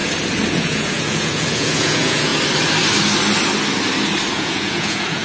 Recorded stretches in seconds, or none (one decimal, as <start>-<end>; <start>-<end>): 0.0-0.5; 2.3-4.3